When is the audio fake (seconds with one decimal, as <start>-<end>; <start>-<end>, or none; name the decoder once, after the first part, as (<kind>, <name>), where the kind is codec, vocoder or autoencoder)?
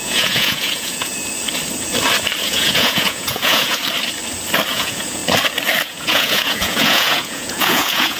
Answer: 0.0-1.1 (vocoder, Vocos); 2.4-3.8; 4.7-5.2; 5.8-8.2